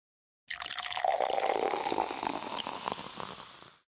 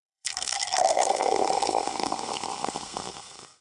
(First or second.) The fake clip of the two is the second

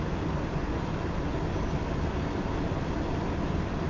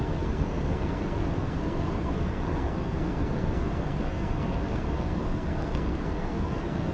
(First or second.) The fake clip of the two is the second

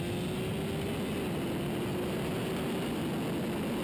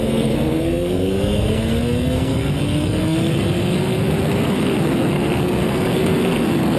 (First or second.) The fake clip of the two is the second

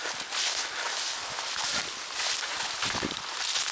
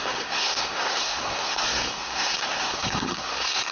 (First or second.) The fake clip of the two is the second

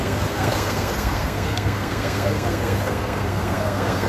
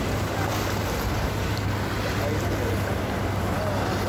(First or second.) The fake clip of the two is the first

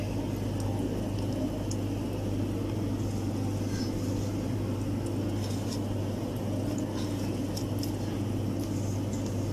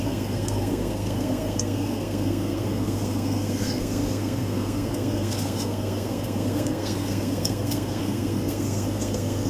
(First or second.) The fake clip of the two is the second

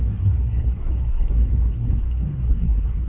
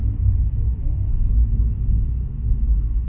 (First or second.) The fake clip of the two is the first